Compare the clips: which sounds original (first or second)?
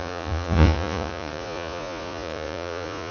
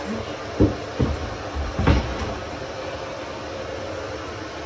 second